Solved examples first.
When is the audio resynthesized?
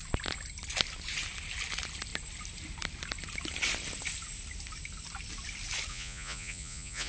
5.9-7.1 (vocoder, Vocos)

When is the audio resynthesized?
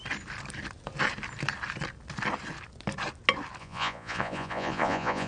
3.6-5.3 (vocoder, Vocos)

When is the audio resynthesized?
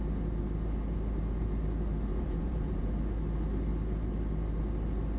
2.1-2.9 (vocoder, Vocos)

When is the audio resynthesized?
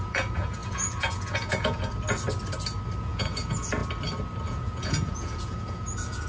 0.0-1.9 (vocoder, Vocos); 3.0-3.8; 4.5-6.3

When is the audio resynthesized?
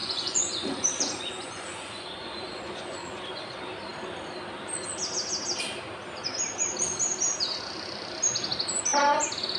0.0-3.2 (vocoder, Vocos)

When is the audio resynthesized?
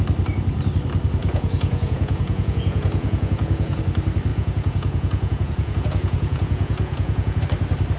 1.2-3.8 (vocoder, Vocos); 4.3-7.4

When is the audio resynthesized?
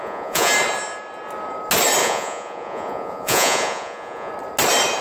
0.0-0.5 (vocoder, Vocos); 2.0-4.3